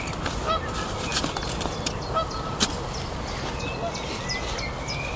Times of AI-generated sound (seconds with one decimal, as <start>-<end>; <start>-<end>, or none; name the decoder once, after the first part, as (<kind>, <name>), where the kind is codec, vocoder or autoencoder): none